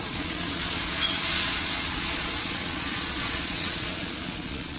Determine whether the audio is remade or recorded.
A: remade